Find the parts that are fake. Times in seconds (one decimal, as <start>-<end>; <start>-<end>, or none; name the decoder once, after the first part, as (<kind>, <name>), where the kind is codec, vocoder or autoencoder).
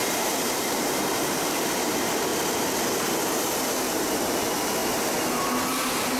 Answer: 0.0-2.3 (vocoder, BigVGAN v2); 3.0-4.8